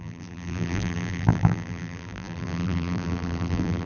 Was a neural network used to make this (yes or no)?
yes